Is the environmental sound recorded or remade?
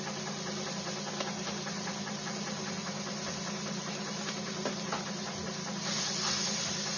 recorded